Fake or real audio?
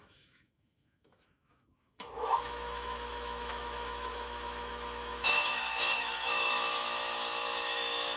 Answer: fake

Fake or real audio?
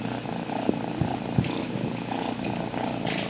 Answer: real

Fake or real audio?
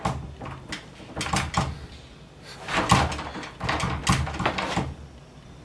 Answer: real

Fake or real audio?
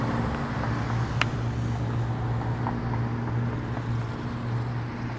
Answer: real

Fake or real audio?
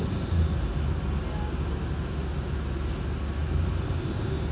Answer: real